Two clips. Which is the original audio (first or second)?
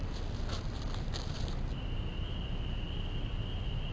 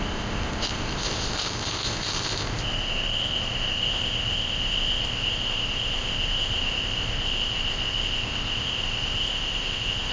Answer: first